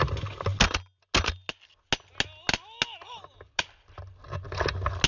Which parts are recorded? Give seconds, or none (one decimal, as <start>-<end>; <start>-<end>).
0.0-5.1